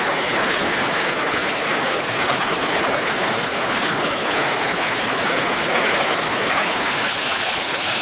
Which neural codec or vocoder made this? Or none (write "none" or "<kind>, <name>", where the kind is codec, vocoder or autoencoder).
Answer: codec, HILCodec